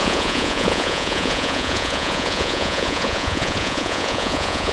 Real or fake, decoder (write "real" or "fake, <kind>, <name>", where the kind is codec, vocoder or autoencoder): fake, vocoder, Vocos